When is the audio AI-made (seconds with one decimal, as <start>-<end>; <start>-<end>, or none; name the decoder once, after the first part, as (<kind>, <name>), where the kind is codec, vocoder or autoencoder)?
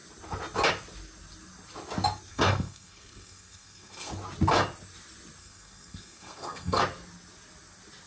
2.3-4.1 (codec, SNAC); 5.4-6.8